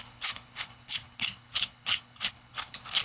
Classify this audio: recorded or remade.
remade